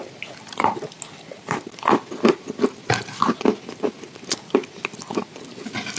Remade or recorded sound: recorded